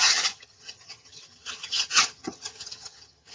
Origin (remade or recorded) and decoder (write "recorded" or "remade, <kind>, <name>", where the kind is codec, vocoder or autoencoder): remade, vocoder, HiFi-GAN